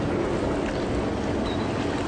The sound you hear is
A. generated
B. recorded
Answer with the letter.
B